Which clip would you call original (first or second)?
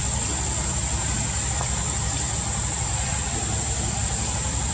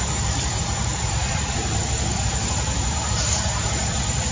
first